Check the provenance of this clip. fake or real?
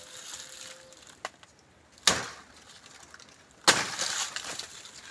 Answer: real